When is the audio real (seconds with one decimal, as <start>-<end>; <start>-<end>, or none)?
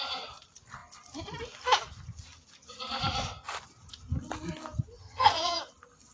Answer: 0.0-5.0; 5.6-6.1